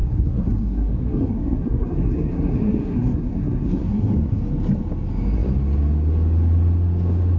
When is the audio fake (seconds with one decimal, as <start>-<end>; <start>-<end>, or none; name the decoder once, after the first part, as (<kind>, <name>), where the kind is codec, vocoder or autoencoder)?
0.0-4.4 (codec, SNAC)